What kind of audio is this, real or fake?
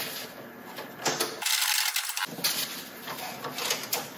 real